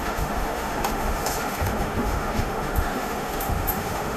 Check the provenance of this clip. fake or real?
fake